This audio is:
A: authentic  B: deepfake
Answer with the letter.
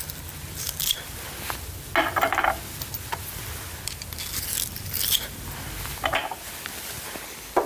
A